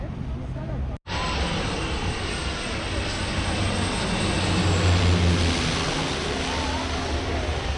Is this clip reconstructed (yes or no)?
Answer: no